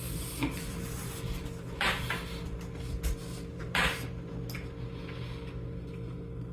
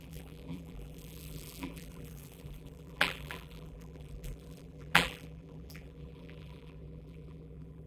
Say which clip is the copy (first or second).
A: second